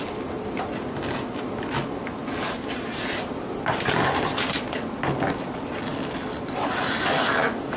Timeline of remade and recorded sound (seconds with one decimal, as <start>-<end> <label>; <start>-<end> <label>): 0.0-7.8 recorded